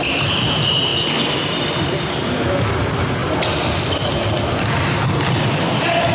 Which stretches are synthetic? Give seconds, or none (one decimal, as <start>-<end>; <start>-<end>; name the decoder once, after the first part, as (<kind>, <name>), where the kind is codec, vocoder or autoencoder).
none